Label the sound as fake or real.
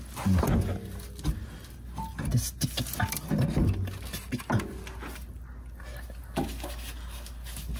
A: real